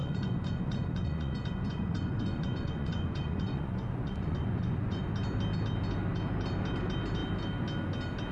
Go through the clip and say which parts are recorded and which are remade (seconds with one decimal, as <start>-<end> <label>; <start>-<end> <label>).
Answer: 0.0-5.0 remade; 5.0-8.3 recorded